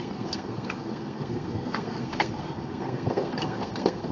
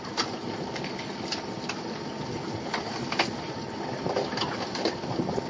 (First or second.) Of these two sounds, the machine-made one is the first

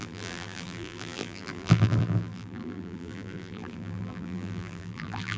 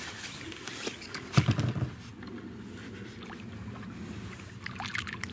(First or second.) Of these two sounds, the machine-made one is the first